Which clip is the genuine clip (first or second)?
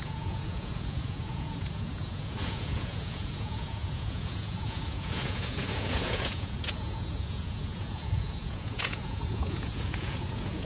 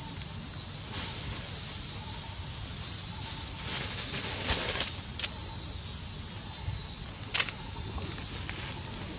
second